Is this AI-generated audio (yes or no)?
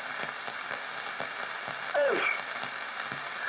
yes